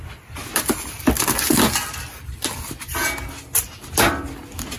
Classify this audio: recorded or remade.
recorded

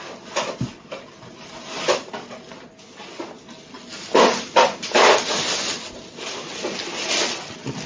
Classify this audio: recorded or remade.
recorded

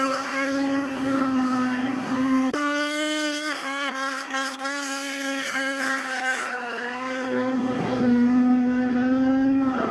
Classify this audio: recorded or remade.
remade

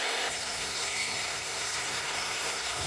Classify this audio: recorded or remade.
remade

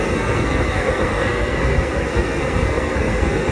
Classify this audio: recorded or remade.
remade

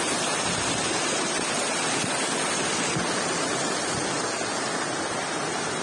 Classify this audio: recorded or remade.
recorded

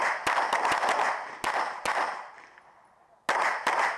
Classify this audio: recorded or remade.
recorded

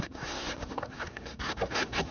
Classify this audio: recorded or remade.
remade